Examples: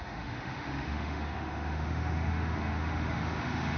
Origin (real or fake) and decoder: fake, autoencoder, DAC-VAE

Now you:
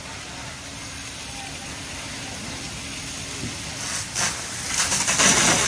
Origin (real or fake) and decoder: real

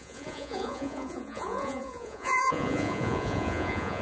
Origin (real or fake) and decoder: fake, vocoder, Vocos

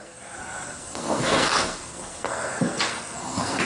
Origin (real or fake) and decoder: fake, codec, SNAC